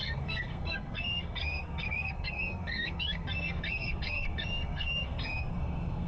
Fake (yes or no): yes